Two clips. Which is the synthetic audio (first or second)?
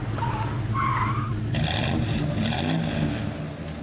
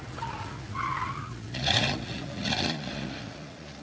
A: second